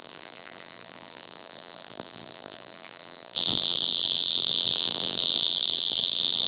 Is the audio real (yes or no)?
no